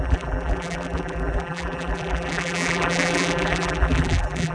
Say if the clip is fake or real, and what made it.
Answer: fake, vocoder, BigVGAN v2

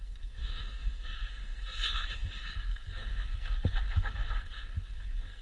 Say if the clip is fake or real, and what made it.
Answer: fake, codec, SNAC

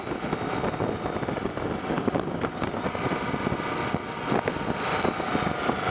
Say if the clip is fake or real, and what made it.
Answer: real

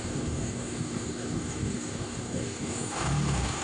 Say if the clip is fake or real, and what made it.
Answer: fake, codec, DAC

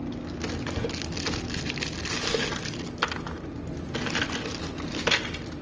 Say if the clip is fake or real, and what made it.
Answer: real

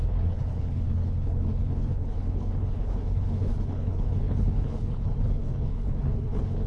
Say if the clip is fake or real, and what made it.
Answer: fake, codec, HILCodec